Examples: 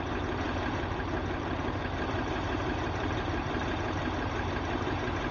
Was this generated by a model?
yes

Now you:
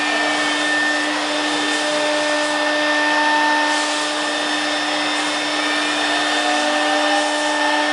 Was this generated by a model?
no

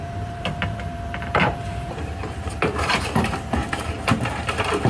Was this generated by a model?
yes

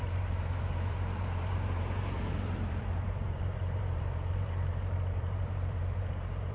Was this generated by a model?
yes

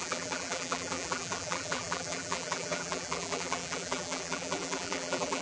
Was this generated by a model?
yes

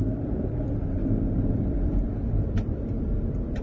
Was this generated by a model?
yes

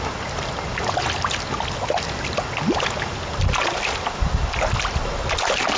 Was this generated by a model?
no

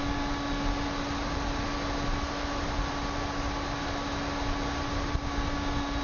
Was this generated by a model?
no